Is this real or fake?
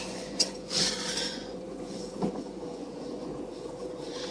fake